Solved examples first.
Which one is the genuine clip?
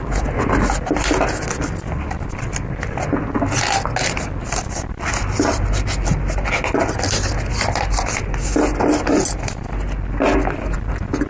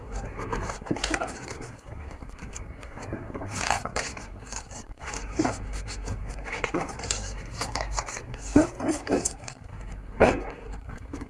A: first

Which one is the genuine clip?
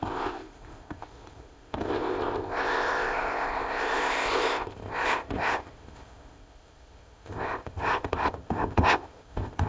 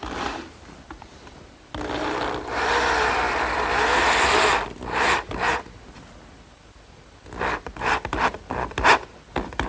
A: second